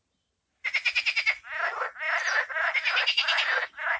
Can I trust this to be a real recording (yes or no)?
yes